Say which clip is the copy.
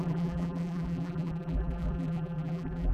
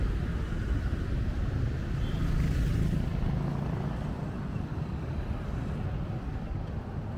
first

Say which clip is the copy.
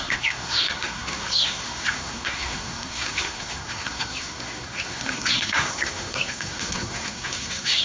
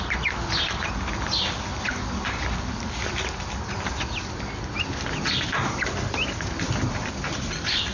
first